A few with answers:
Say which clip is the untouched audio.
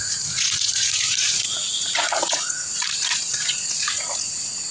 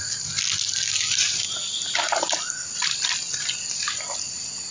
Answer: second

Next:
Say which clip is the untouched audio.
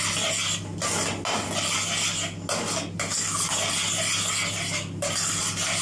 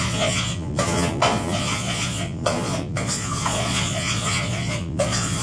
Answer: first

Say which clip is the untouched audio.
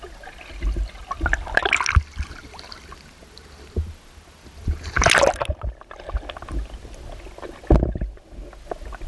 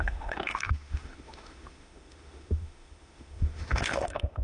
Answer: first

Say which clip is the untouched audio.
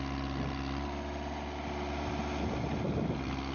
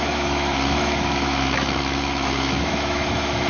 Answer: first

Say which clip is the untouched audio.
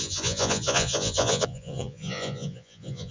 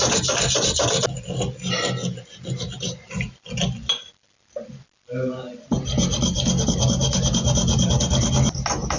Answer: second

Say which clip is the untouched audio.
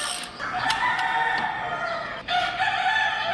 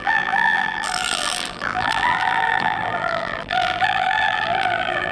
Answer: first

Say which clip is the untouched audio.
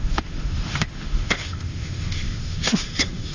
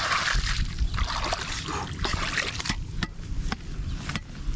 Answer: second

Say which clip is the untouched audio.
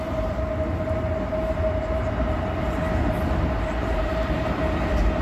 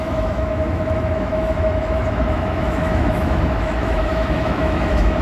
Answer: first